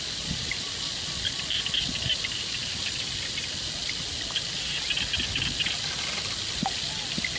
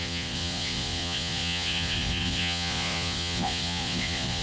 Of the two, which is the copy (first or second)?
second